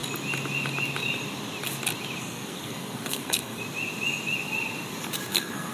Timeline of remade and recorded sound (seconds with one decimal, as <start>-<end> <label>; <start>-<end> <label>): 0.0-2.2 recorded; 2.2-3.6 remade; 3.6-5.3 recorded; 5.3-5.7 remade